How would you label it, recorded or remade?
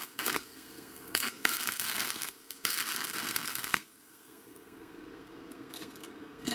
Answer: remade